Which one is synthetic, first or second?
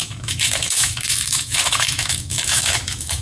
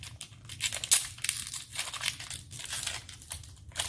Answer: first